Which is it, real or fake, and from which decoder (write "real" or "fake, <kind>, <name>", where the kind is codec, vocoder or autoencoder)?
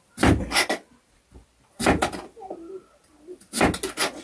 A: real